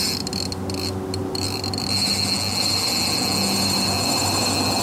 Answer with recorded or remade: recorded